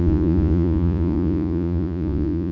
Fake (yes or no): yes